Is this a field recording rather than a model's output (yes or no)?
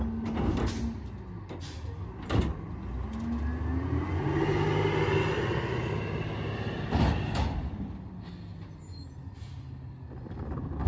yes